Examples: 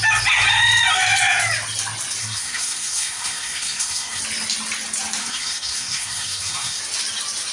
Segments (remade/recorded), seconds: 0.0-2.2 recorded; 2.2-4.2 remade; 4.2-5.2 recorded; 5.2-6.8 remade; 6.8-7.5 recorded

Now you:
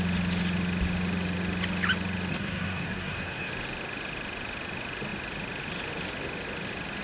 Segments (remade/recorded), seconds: 0.0-2.3 recorded; 2.3-3.5 remade; 3.5-7.0 recorded

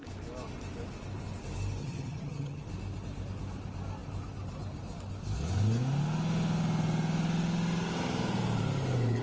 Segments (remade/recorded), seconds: 0.0-1.8 recorded; 1.8-2.6 remade; 2.6-9.2 recorded

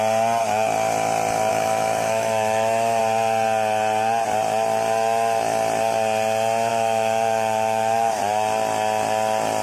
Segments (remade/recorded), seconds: 0.0-1.5 recorded; 1.5-3.0 remade; 3.0-6.7 recorded; 6.7-8.2 remade; 8.2-9.6 recorded

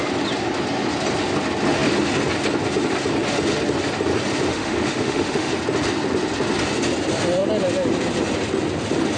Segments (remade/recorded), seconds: 0.0-4.5 recorded; 4.5-5.5 remade; 5.5-9.2 recorded

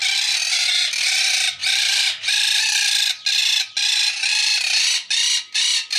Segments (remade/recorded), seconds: 0.0-1.6 recorded; 1.6-2.3 remade; 2.3-6.0 recorded

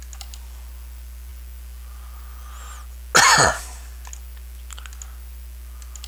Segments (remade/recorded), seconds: 0.0-6.1 recorded